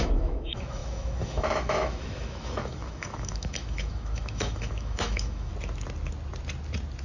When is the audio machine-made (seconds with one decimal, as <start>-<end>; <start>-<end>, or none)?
0.0-5.5